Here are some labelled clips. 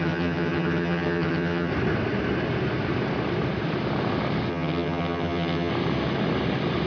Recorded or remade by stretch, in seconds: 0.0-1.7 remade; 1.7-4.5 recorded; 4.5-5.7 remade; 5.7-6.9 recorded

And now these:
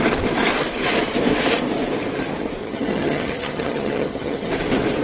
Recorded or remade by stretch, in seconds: 0.0-2.6 recorded; 2.6-4.5 remade; 4.5-5.0 recorded